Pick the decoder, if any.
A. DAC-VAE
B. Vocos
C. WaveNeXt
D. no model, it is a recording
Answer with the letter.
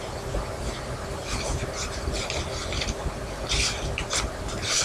D